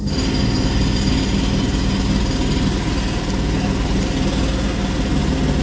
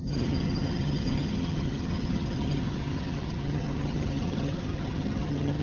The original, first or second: first